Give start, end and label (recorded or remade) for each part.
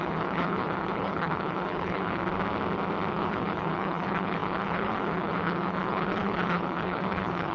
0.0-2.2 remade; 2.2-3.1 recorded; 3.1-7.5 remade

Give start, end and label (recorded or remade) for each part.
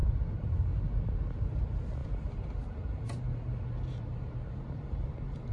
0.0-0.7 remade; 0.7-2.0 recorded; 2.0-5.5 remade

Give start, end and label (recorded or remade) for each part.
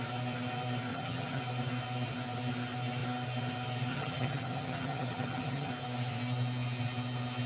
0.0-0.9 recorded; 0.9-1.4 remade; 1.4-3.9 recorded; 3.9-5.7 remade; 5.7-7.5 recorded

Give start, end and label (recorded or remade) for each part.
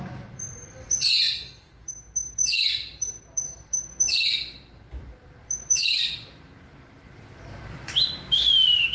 0.0-2.4 remade; 2.4-2.9 recorded; 2.9-8.9 remade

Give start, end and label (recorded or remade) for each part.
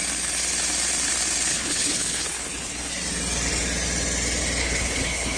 0.0-1.5 recorded; 1.5-2.9 remade; 2.9-4.6 recorded; 4.6-5.4 remade